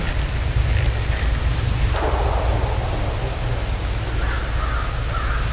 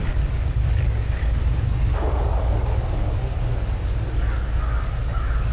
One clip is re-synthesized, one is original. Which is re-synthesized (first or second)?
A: second